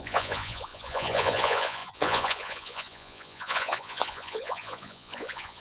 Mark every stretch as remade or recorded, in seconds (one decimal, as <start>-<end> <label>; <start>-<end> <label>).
0.0-5.6 remade